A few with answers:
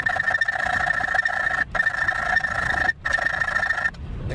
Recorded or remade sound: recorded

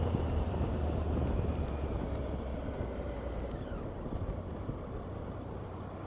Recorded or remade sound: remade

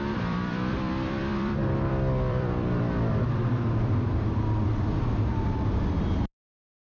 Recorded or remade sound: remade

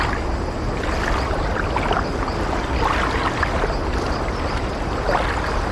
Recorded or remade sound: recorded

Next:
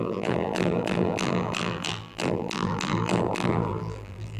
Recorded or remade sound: remade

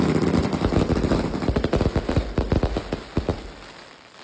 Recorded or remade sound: recorded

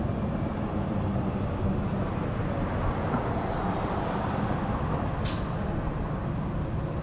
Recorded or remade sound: recorded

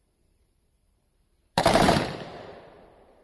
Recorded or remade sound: remade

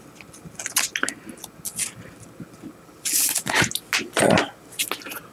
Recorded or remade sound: recorded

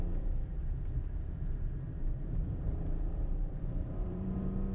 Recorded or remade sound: remade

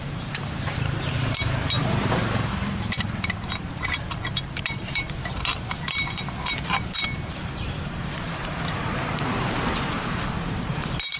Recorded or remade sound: remade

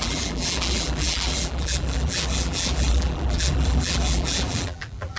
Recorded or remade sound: remade